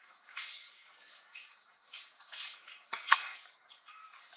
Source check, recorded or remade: remade